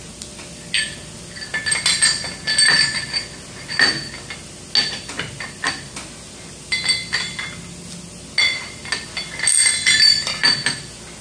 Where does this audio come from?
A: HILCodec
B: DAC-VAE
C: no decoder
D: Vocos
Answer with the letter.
C